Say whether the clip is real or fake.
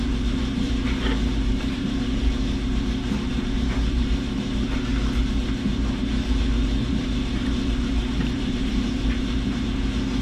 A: fake